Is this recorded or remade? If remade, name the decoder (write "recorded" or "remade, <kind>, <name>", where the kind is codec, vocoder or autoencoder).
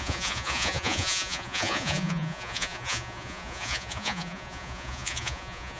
remade, vocoder, Vocos